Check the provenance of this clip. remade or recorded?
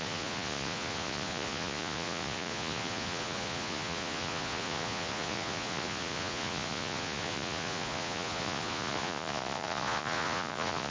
remade